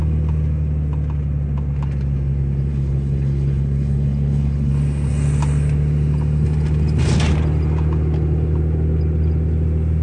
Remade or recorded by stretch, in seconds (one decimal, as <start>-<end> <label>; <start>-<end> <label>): 0.0-2.7 recorded; 2.7-4.7 remade; 4.7-10.0 recorded

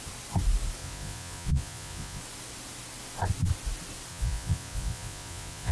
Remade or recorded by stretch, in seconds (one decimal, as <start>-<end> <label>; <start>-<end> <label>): 0.0-0.8 recorded; 0.8-2.2 remade; 2.2-4.1 recorded; 4.1-5.7 remade